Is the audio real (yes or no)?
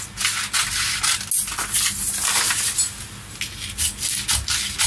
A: yes